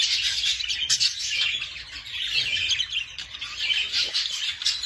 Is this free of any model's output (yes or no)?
yes